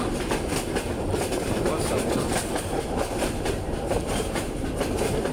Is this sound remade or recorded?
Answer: recorded